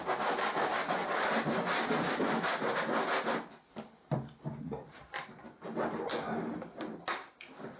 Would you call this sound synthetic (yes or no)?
no